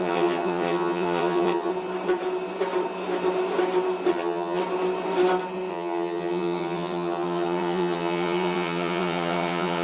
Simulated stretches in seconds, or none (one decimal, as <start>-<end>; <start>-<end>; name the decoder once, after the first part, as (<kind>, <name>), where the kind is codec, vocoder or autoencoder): 0.0-1.7 (vocoder, HiFi-GAN); 4.1-4.6; 5.7-9.8